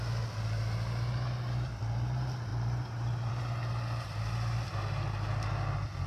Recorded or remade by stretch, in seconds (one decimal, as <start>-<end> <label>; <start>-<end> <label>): 0.0-6.1 recorded